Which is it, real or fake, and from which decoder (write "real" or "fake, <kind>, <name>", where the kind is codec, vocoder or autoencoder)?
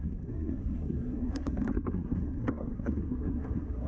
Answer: fake, codec, SNAC